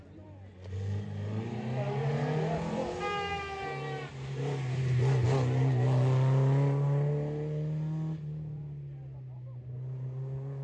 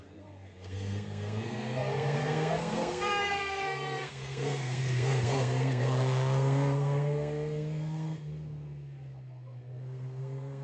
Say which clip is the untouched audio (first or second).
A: first